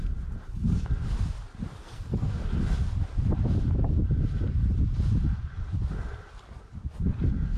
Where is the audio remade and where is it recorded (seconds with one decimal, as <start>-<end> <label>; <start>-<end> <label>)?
0.0-1.8 recorded; 1.8-2.4 remade; 2.4-7.6 recorded